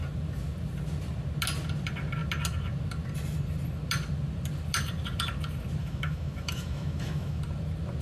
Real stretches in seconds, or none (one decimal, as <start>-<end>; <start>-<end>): 0.0-5.8; 7.4-8.0